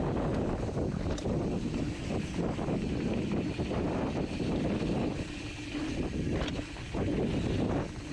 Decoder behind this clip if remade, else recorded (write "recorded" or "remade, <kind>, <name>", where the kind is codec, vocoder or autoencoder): recorded